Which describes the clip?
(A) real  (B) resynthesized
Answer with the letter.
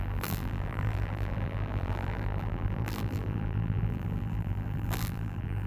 B